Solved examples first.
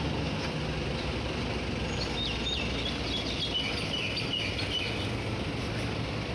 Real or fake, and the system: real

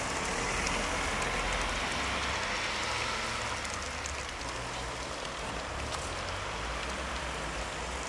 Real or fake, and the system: real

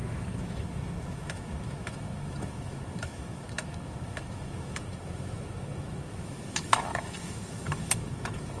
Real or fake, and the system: fake, autoencoder, DAC-VAE